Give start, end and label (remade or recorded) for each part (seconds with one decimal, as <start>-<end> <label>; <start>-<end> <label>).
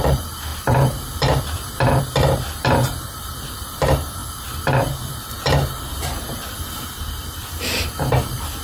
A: 0.0-8.6 remade